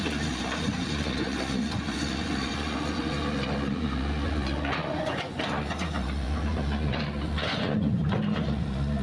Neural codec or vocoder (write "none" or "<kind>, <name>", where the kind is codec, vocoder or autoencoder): vocoder, Vocos